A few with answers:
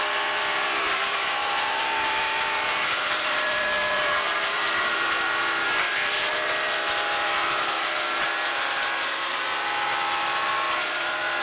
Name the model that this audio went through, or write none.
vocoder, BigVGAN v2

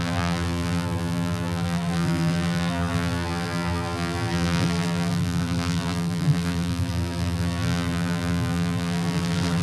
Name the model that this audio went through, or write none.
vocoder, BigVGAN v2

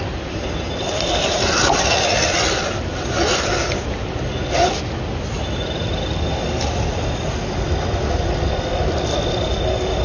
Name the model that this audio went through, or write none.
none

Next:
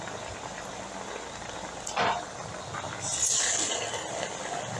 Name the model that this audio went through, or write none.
none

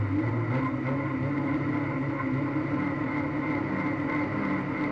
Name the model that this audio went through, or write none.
none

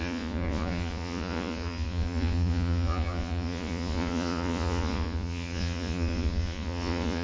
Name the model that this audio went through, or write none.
vocoder, Vocos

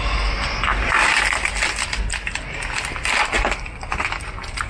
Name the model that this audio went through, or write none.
none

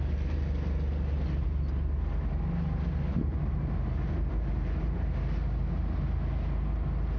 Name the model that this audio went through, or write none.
none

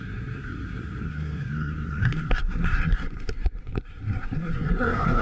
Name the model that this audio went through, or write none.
codec, SNAC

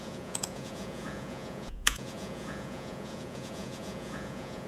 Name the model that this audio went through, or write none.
vocoder, Vocos